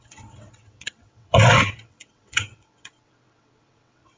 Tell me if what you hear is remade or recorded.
remade